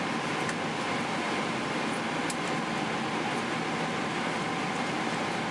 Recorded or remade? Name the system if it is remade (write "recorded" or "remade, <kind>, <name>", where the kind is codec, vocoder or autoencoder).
recorded